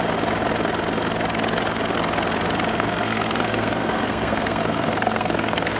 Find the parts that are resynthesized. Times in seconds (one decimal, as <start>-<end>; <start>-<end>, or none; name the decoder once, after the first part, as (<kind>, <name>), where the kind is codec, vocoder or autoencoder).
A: 2.7-5.8 (codec, SNAC)